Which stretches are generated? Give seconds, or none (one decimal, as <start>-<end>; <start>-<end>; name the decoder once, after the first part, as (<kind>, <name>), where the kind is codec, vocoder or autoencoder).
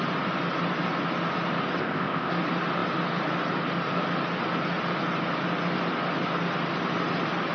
1.8-2.3 (codec, ZipCodec)